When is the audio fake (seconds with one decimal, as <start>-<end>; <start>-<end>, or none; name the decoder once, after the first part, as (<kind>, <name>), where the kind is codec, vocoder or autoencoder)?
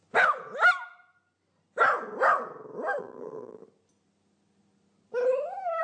3.0-3.6 (vocoder, BigVGAN v2)